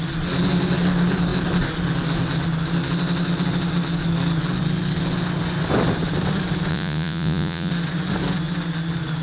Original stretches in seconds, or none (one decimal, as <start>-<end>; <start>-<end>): 0.0-6.7; 7.7-9.2